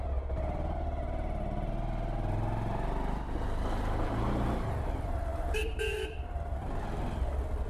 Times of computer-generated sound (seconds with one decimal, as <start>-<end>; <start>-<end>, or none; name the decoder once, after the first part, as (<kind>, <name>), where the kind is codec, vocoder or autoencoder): 5.3-6.8 (vocoder, BigVGAN v2)